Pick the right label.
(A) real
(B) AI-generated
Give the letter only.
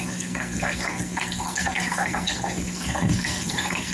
B